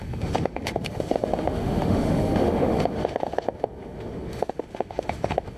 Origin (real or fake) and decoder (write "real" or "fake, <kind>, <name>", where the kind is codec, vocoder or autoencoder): fake, autoencoder, DAC-VAE